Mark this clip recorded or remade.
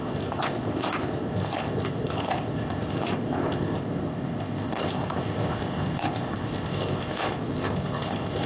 remade